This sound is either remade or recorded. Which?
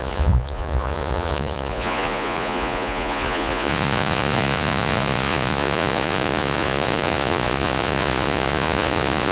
remade